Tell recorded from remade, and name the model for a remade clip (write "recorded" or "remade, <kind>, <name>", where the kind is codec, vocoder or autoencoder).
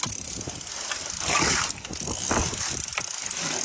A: recorded